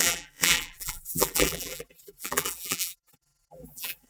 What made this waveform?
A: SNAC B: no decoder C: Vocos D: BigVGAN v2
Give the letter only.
D